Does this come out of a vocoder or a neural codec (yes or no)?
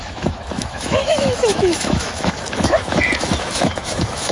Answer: yes